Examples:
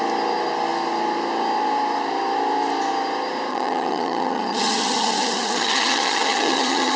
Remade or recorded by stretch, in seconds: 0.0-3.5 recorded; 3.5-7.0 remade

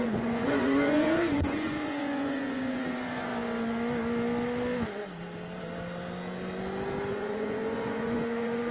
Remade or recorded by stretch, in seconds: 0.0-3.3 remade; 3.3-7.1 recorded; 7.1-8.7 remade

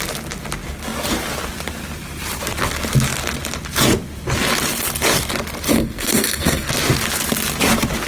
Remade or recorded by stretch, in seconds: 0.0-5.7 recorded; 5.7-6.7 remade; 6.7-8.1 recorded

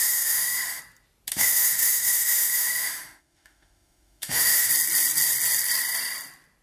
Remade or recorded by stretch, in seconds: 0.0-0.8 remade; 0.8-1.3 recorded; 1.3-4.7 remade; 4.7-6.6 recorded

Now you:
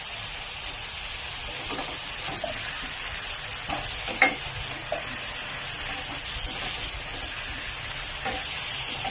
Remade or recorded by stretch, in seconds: 0.0-1.4 recorded; 1.4-3.5 remade; 3.5-9.1 recorded

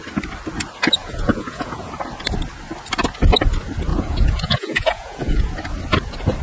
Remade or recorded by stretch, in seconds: 0.0-1.0 recorded; 1.0-1.9 remade; 1.9-3.9 recorded; 3.9-5.5 remade; 5.5-6.4 recorded